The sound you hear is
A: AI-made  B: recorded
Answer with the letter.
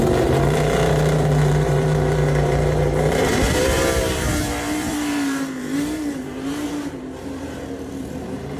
A